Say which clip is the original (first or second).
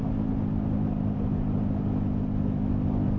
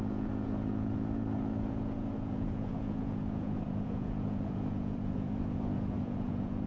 first